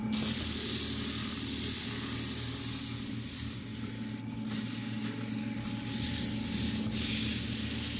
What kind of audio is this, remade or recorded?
recorded